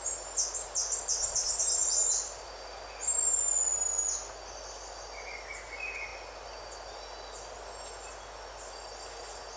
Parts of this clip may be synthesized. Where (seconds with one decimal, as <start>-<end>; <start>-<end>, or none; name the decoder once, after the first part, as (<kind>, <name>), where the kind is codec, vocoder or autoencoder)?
none